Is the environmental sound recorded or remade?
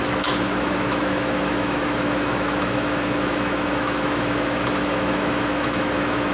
remade